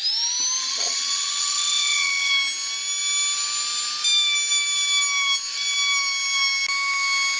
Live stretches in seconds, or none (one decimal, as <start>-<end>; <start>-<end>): 0.0-0.6; 2.3-7.4

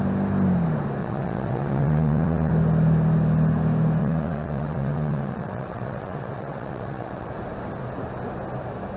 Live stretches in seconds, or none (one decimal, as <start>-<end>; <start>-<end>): 0.0-1.0; 2.5-4.0; 7.3-9.0